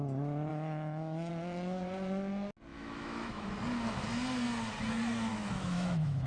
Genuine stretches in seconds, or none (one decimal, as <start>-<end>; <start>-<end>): 0.0-0.5; 1.3-2.7; 3.5-5.3